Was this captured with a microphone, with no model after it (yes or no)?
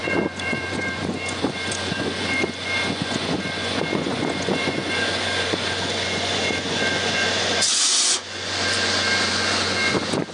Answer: no